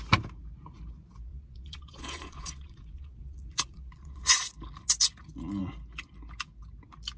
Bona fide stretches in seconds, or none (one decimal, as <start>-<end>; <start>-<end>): 0.0-1.3; 4.5-7.2

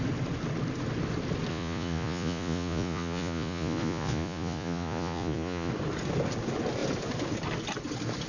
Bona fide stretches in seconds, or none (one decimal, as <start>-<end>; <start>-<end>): 0.0-1.5; 5.7-8.3

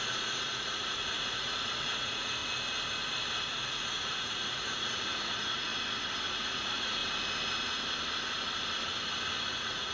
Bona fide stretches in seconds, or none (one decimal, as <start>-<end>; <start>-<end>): 2.4-3.5; 5.7-6.3; 7.0-9.5

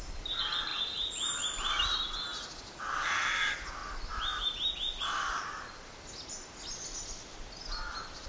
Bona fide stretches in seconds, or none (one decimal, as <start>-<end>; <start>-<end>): 0.0-8.3

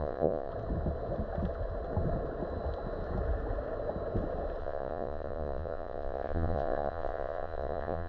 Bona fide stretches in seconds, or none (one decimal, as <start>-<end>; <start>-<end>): 0.5-4.6

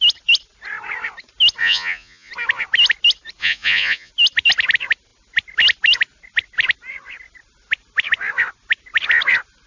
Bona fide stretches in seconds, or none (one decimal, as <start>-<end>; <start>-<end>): 0.0-1.6; 2.3-3.4; 4.1-9.7

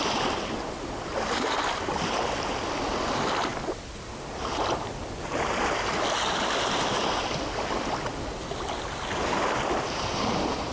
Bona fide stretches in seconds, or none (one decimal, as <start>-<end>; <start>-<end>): 0.0-10.7

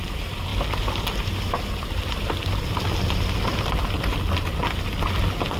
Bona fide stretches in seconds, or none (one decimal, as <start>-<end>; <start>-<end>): 0.0-5.6